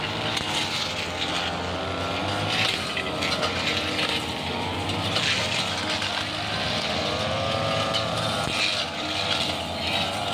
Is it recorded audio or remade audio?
recorded